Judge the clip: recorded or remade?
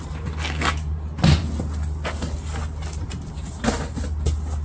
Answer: recorded